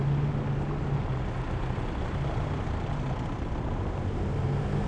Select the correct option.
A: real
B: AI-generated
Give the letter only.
A